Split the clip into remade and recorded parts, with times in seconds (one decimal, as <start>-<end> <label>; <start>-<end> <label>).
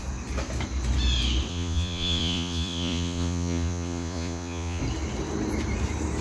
0.0-1.5 recorded; 1.5-4.8 remade; 4.8-6.2 recorded